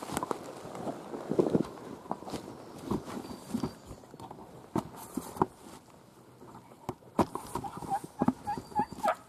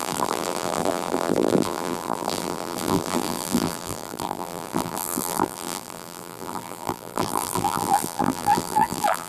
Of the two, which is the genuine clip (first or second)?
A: first